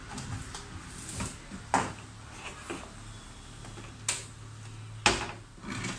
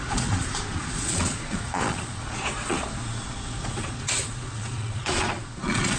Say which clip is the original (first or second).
first